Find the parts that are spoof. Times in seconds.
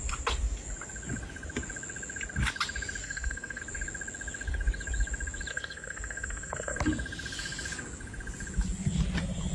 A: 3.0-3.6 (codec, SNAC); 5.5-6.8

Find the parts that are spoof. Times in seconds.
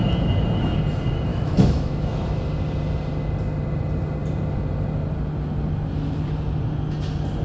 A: 1.3-2.4 (autoencoder, DAC-VAE)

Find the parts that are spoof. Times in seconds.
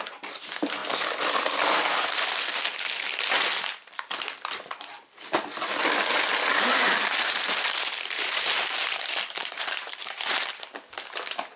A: 6.5-10.5 (vocoder, BigVGAN v2)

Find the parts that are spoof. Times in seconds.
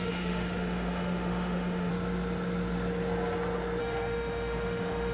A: 0.0-1.9 (autoencoder, DAC-VAE); 3.8-5.1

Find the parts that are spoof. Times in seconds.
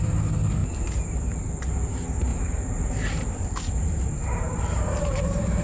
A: 0.6-1.5 (vocoder, BigVGAN v2); 2.3-5.6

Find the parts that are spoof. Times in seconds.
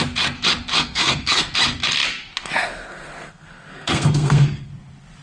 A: 0.8-1.5 (codec, SNAC); 2.4-4.7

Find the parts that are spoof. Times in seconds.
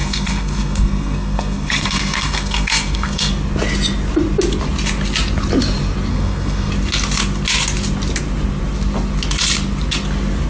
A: 0.0-3.3 (codec, SNAC); 6.1-6.7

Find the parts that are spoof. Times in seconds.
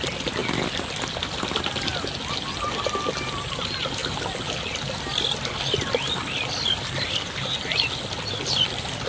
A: none